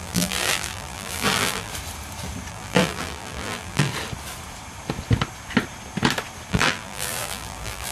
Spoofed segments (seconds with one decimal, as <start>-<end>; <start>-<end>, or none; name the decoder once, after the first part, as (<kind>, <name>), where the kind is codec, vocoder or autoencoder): 0.0-1.7 (vocoder, BigVGAN v2); 2.5-3.9; 6.5-7.9